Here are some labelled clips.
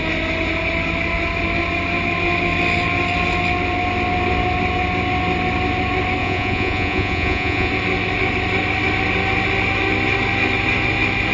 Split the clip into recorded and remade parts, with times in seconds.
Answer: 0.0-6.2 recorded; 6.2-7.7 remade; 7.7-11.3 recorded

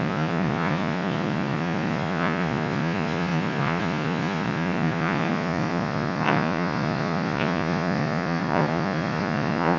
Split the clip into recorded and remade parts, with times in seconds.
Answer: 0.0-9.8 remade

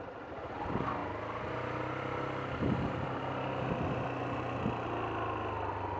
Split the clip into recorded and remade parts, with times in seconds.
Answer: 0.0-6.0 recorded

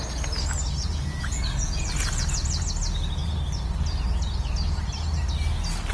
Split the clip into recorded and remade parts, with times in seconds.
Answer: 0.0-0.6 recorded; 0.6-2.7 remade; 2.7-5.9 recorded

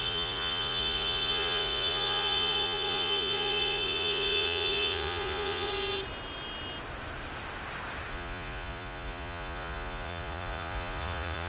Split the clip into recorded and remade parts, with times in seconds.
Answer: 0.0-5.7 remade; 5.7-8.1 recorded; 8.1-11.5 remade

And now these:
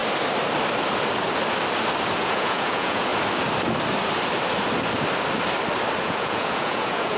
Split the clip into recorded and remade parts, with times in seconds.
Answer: 0.0-2.2 recorded; 2.2-3.1 remade; 3.1-6.0 recorded; 6.0-7.2 remade

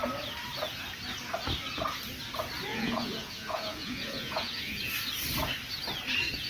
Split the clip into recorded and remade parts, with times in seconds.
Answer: 0.0-2.7 recorded; 2.7-4.9 remade; 4.9-6.5 recorded